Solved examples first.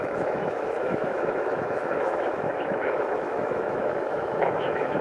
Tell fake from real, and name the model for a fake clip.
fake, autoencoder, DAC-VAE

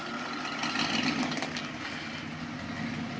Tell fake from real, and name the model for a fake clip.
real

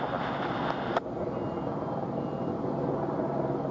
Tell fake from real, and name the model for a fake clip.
real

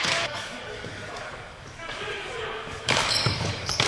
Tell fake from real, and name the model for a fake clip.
fake, codec, DAC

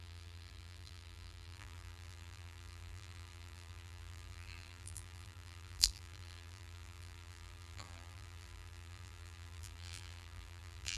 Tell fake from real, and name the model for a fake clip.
fake, vocoder, BigVGAN v2